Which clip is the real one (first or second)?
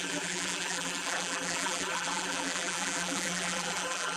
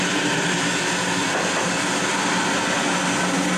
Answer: second